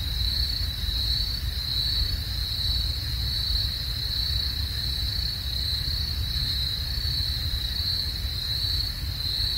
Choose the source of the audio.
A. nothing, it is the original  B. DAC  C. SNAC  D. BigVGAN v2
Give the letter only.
A